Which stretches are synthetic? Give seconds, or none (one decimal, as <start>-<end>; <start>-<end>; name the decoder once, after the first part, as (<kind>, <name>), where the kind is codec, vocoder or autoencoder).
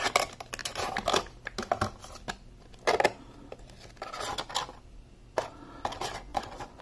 6.3-6.8 (vocoder, Vocos)